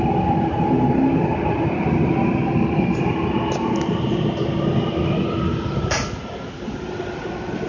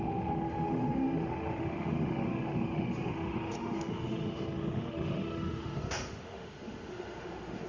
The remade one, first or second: second